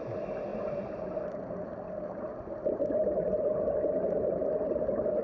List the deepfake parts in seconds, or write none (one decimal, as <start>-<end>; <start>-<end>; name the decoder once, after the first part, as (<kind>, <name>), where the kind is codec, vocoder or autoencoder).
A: none

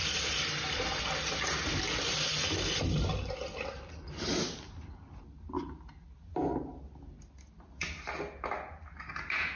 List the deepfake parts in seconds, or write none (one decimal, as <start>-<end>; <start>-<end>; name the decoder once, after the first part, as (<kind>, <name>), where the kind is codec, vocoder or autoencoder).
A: none

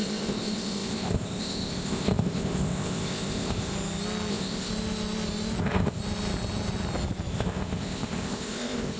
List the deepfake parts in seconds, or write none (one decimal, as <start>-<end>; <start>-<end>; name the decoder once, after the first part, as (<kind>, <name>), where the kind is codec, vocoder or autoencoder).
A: 0.0-3.7 (codec, ZipCodec); 4.3-4.7; 5.6-6.0; 7.3-9.0

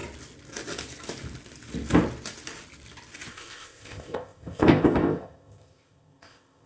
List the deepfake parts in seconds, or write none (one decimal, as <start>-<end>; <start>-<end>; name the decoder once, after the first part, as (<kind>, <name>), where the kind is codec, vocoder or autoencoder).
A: 3.3-6.7 (codec, ZipCodec)